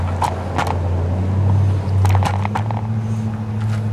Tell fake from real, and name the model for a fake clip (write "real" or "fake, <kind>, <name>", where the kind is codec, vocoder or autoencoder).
real